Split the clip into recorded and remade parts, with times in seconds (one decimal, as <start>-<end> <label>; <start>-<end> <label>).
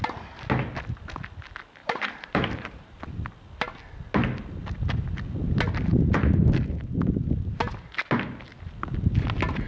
0.0-1.8 recorded; 1.8-3.0 remade; 3.0-9.7 recorded